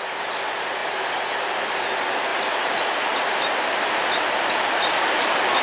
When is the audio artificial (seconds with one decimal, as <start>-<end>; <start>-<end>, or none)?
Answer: 0.8-1.5; 2.3-3.4